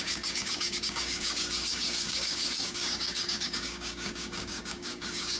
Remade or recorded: remade